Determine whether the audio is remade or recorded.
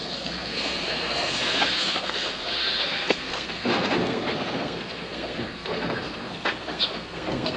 remade